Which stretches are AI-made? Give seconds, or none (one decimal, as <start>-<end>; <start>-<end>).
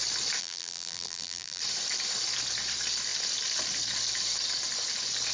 0.4-1.6